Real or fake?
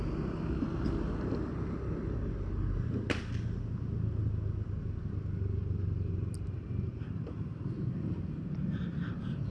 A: real